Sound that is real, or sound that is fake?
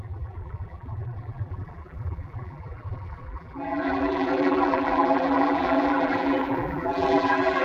fake